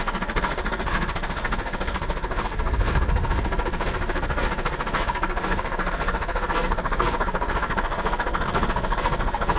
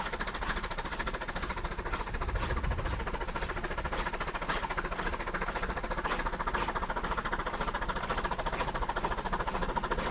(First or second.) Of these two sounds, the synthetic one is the first